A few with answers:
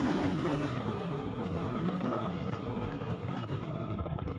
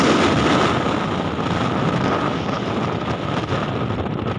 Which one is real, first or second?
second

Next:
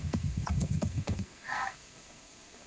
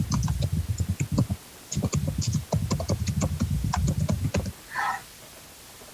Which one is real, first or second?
second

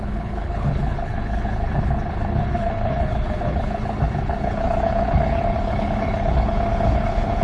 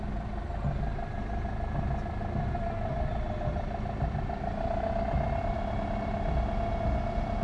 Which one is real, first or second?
second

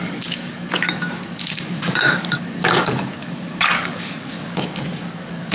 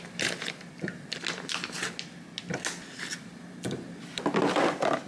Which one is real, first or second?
second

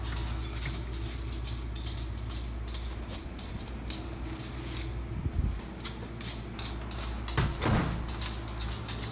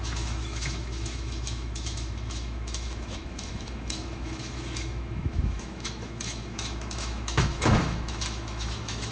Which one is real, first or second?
first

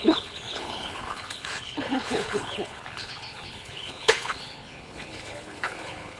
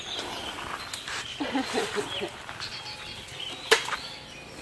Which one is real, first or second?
second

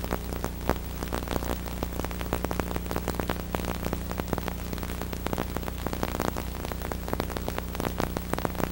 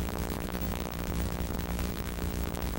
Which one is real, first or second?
first